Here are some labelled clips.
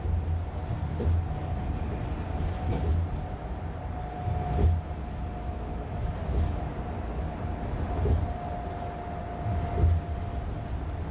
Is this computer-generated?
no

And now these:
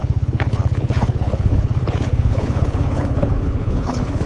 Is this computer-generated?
yes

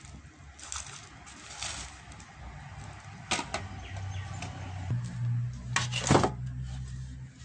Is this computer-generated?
no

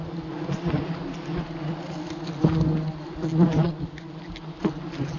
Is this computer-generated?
no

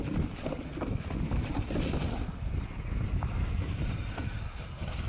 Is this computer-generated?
no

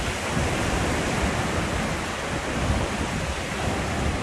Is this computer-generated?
no